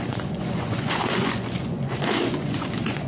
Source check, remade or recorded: remade